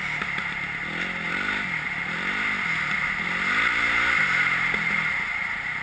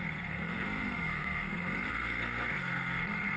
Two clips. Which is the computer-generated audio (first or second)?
second